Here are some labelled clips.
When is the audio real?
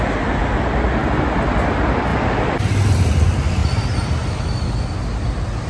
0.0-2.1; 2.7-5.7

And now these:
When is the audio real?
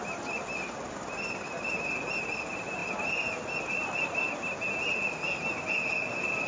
0.0-6.5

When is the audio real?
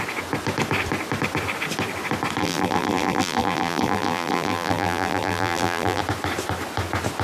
0.0-2.4; 6.0-7.2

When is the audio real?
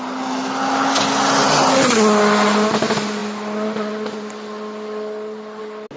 0.0-6.0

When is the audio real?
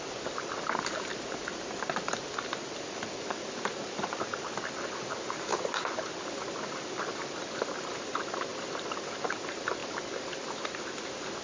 0.0-5.5; 7.2-8.5; 9.4-9.8; 10.5-11.4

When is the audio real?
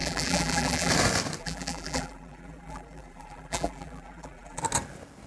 0.9-1.4; 4.6-5.3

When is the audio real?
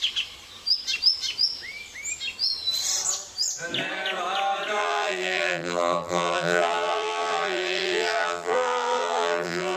0.0-4.8